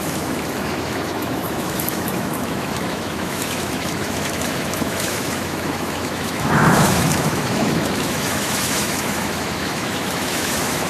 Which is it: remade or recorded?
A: remade